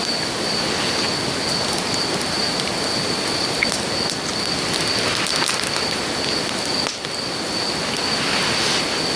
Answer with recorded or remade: recorded